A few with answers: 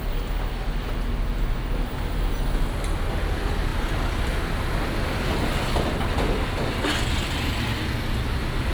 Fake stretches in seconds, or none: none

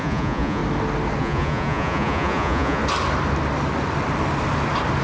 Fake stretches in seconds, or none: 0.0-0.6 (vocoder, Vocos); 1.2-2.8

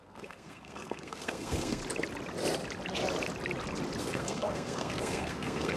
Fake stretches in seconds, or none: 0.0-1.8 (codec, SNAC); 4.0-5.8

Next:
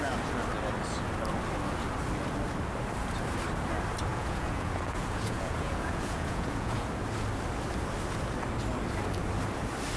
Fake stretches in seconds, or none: 4.1-6.9 (vocoder, Vocos)

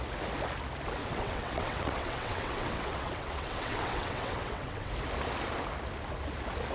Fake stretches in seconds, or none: 1.0-4.9 (vocoder, WaveNeXt)